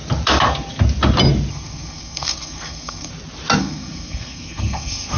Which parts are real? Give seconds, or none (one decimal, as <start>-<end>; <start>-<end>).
0.0-1.5; 3.1-3.6